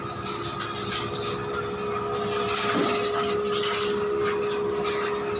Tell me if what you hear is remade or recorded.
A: recorded